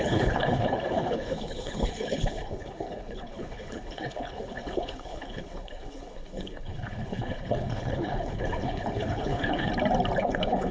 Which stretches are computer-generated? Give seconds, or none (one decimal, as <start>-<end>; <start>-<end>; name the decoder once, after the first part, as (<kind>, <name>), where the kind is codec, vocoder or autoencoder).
0.0-9.7 (codec, HILCodec); 10.2-10.7